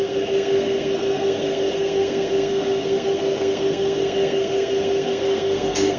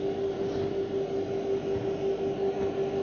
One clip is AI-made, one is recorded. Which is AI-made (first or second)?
first